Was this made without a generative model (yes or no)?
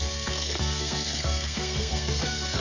no